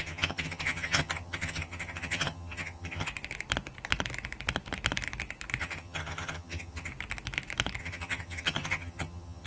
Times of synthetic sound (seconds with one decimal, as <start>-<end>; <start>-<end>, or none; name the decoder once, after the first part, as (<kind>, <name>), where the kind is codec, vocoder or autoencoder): 0.0-3.1 (vocoder, HiFi-GAN); 5.6-6.9; 7.8-9.5